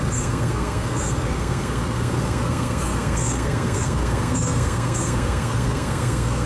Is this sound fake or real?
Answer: fake